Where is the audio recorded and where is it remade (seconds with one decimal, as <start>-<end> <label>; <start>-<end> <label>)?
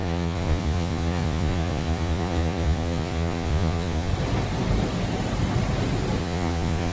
0.0-4.1 remade; 4.1-6.2 recorded; 6.2-6.9 remade